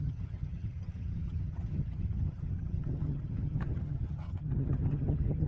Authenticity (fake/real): fake